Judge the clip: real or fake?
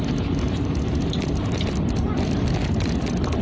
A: real